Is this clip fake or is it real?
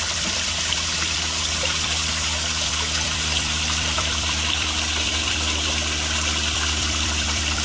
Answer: fake